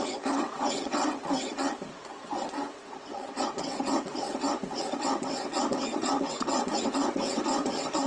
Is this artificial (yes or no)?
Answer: yes